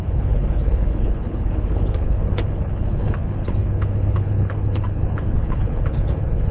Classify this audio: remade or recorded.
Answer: remade